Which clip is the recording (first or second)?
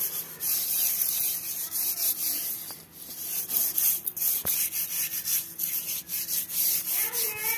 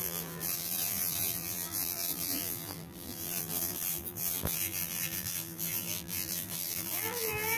first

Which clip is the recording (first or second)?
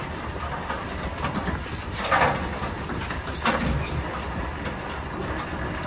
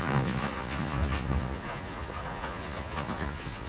first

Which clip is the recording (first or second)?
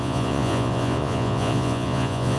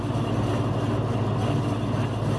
second